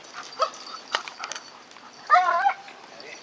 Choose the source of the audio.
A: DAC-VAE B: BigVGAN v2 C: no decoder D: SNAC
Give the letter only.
C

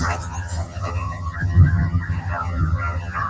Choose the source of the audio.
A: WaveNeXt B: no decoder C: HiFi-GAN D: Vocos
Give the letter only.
C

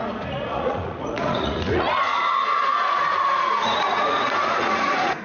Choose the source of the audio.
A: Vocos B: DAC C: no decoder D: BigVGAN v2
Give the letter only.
A